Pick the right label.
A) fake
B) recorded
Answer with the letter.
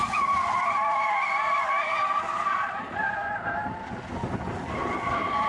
B